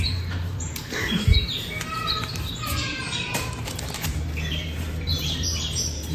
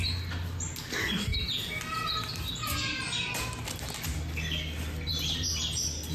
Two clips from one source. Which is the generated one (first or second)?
first